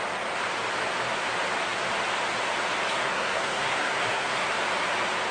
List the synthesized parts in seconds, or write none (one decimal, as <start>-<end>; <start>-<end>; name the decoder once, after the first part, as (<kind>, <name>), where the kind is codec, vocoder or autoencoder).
2.9-4.5 (codec, SNAC)